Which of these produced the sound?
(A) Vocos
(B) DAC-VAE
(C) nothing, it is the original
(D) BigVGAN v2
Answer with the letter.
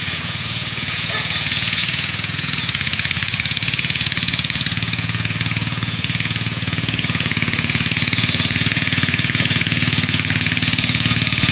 A